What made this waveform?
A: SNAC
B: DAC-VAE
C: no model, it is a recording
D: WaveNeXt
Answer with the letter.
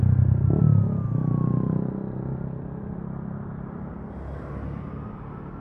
C